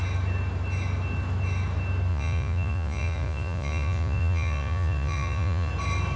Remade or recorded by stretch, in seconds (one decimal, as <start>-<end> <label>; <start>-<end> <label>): 0.0-2.1 recorded; 2.1-5.7 remade; 5.7-6.2 recorded